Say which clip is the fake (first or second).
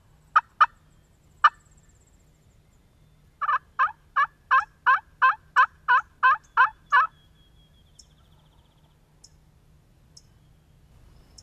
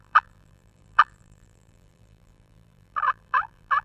second